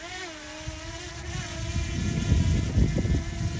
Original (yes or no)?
yes